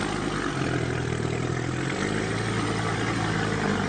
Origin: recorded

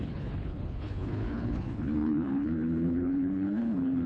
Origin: remade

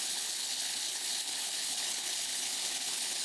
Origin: remade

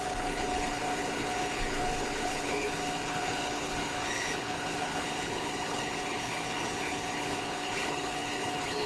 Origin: remade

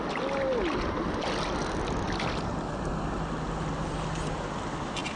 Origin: recorded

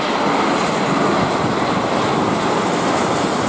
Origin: recorded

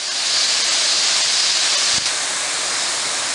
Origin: recorded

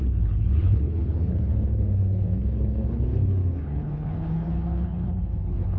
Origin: remade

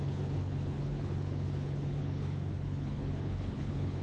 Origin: remade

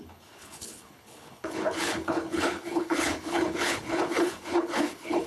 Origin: remade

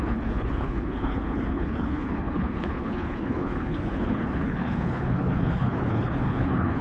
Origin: remade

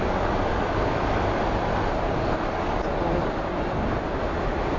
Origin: recorded